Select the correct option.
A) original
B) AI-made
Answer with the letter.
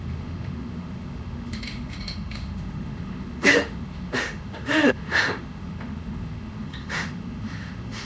B